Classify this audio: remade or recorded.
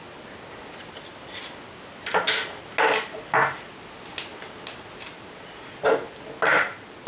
recorded